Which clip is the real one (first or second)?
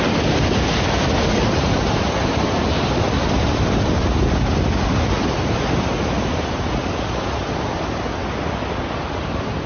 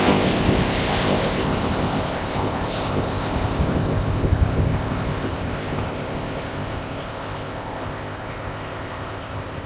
first